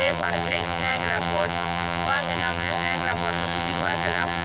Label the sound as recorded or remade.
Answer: remade